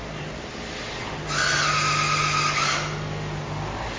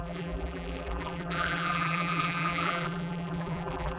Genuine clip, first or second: first